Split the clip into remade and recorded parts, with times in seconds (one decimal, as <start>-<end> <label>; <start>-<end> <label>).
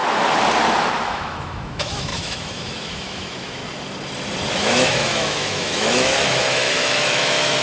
0.0-1.0 recorded; 1.0-3.6 remade; 3.6-4.5 recorded; 4.5-7.6 remade